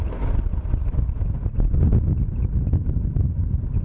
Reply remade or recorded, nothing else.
recorded